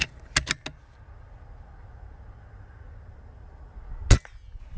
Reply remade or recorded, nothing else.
recorded